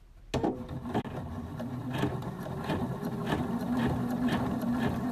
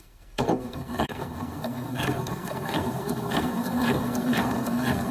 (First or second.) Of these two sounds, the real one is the first